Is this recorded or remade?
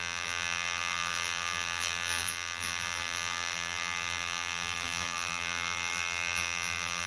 remade